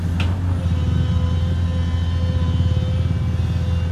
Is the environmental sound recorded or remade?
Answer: recorded